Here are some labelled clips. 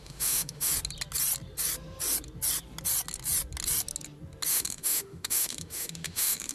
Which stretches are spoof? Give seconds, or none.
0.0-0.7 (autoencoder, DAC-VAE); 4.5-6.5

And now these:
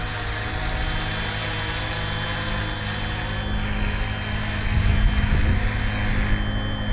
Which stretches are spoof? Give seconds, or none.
none

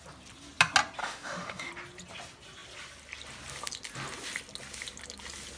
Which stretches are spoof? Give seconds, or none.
1.0-1.7 (autoencoder, DAC-VAE)

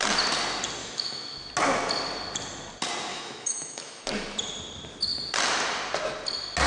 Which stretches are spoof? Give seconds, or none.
0.8-1.5 (autoencoder, DAC-VAE); 3.1-4.0